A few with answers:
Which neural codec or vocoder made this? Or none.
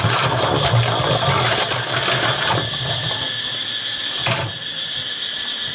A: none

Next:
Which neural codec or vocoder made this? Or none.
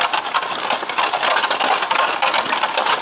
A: none